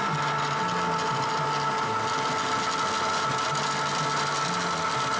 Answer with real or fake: real